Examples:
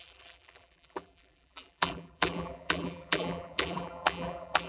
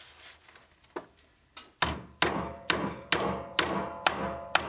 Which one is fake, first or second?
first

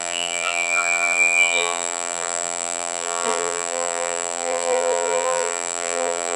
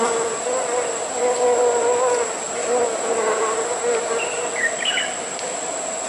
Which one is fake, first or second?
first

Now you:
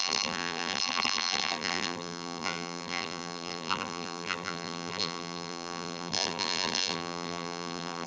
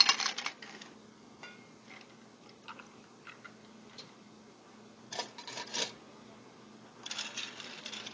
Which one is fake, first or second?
first